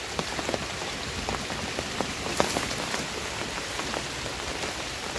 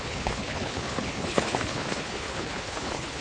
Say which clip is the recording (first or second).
first